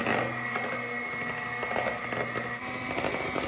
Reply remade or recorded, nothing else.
recorded